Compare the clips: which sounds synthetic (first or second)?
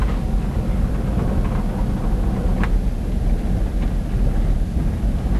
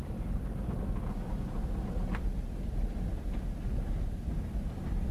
second